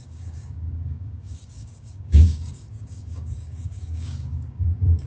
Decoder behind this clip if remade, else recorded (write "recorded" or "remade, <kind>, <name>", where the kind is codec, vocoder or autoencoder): remade, codec, DAC